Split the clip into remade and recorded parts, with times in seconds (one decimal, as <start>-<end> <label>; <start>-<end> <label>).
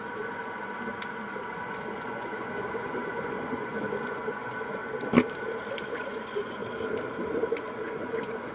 0.0-0.6 remade; 0.6-1.5 recorded; 1.5-4.8 remade; 4.8-5.9 recorded; 5.9-6.6 remade; 6.6-7.5 recorded; 7.5-8.5 remade